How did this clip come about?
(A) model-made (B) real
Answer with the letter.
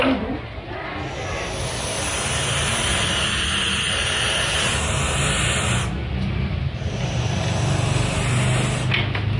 B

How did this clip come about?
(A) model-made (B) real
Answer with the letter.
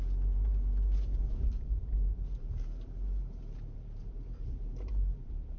A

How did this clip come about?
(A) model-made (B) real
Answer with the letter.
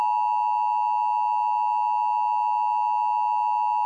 B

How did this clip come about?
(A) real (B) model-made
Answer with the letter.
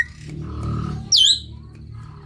A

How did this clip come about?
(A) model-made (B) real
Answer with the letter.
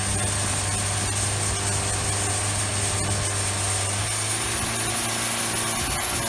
B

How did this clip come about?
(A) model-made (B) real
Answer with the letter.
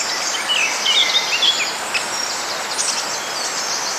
B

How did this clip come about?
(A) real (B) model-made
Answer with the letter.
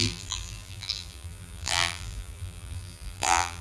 B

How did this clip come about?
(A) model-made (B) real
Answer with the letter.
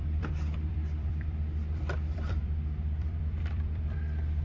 A